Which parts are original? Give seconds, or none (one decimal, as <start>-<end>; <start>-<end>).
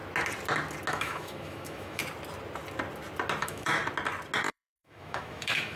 0.0-0.9; 2.0-3.4; 3.8-4.4